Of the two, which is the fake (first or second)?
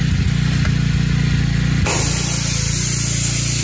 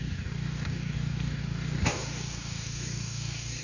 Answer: second